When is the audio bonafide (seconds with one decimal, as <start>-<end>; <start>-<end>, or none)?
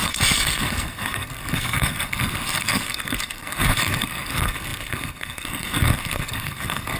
none